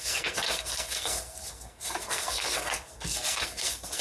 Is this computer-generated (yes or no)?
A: yes